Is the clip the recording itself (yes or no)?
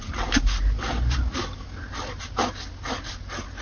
yes